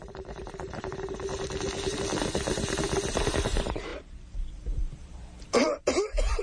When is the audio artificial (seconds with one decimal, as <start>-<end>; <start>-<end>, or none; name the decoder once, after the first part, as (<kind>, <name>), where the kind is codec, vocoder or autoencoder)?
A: 0.0-1.2 (vocoder, BigVGAN v2)